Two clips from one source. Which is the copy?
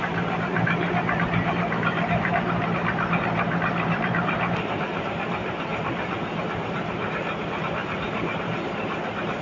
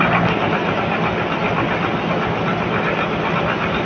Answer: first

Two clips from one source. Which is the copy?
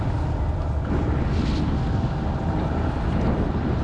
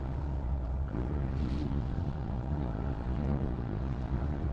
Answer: second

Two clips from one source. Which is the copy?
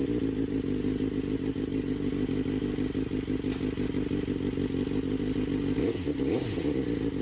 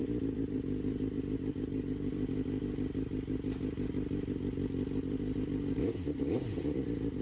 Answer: second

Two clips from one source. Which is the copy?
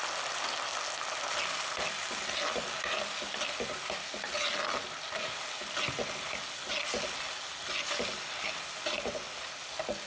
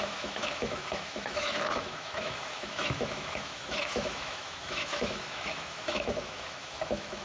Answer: second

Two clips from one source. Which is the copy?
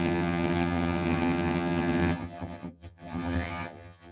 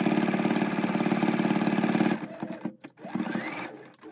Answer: first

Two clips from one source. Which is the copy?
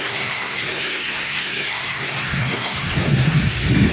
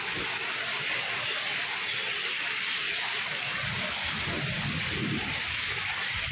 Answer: first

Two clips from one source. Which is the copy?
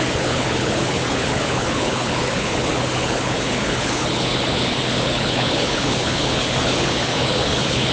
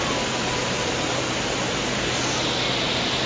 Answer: first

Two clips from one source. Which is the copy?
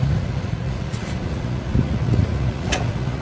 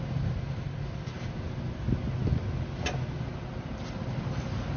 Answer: first